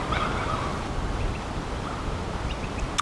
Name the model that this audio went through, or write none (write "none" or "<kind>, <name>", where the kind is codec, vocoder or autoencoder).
none